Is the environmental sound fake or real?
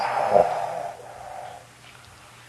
real